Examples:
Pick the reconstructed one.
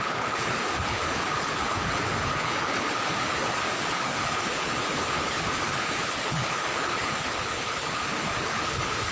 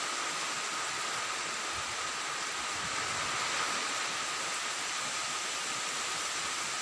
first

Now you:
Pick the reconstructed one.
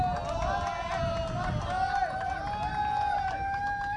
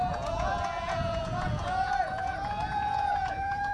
second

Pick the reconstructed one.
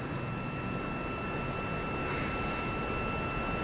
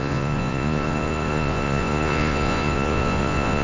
second